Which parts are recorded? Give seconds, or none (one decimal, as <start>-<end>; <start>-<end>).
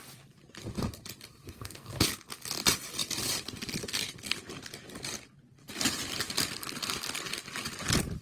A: 0.0-1.3; 2.0-8.2